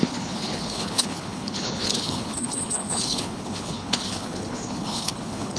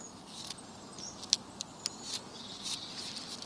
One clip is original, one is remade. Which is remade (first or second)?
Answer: first